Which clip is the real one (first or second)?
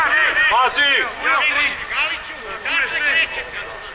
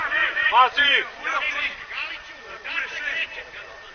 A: first